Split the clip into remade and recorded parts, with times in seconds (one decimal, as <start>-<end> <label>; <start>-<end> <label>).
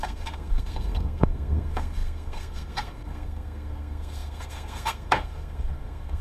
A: 0.0-6.2 remade